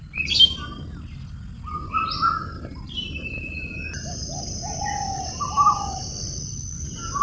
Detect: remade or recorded recorded